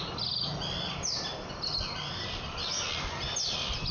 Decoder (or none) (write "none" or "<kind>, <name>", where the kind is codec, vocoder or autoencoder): none